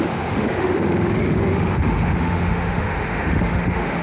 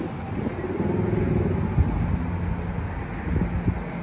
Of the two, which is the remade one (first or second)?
first